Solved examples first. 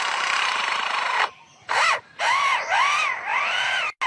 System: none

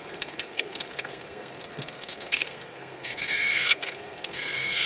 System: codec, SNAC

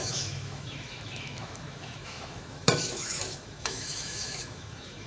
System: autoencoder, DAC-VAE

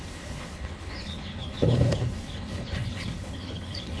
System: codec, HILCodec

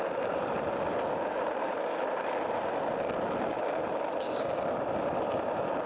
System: none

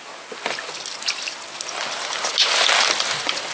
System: none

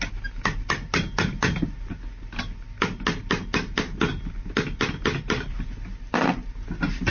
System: none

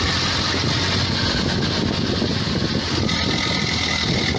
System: none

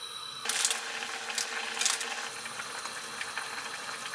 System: none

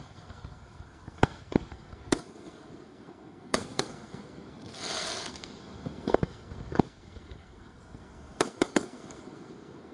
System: codec, SNAC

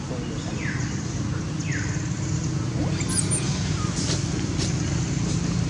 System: none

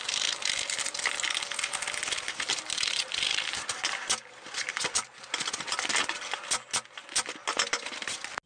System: none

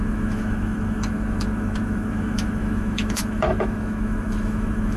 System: autoencoder, DAC-VAE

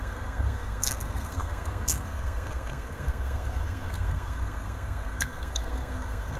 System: codec, SNAC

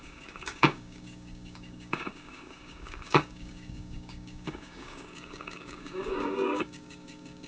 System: codec, DAC